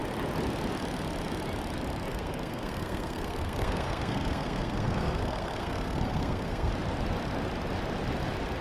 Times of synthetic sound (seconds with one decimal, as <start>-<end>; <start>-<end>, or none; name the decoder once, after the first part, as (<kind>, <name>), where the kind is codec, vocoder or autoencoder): 2.1-6.7 (codec, SNAC)